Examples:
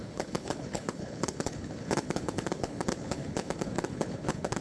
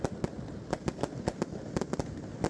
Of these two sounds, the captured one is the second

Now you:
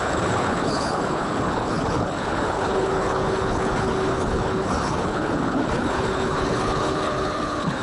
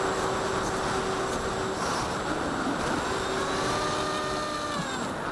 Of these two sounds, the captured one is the second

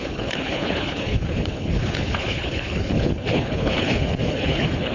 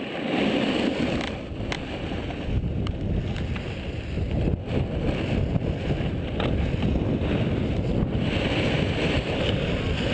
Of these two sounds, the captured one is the second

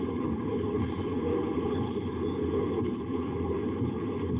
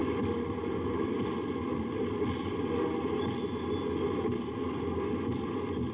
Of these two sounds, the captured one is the second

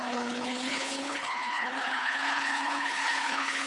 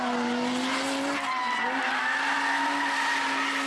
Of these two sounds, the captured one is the second